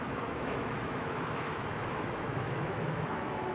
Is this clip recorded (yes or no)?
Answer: no